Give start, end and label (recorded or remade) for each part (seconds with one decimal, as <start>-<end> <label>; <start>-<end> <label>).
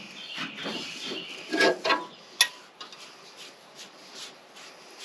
0.0-5.0 recorded